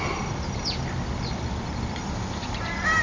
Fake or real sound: real